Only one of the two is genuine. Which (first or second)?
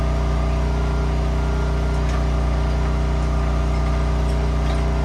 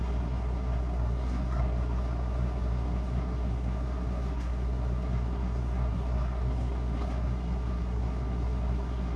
first